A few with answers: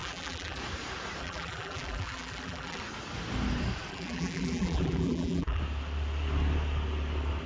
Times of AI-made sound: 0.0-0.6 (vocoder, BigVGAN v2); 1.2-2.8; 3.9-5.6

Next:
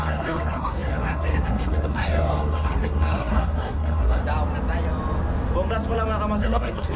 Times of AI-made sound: 0.0-4.2 (codec, SNAC); 6.4-7.0

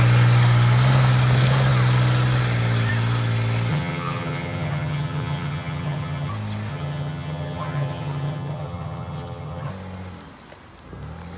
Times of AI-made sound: 3.7-6.3 (vocoder, HiFi-GAN); 6.7-9.7

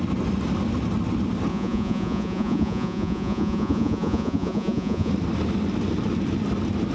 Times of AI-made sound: 1.5-5.1 (vocoder, Vocos)

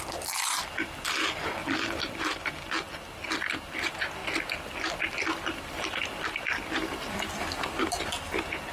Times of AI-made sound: 1.6-2.3 (vocoder, BigVGAN v2); 6.8-7.8